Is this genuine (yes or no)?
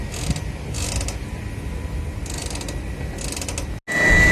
yes